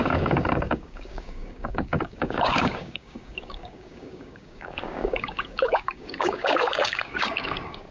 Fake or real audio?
fake